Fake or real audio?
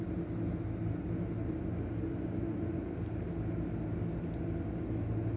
real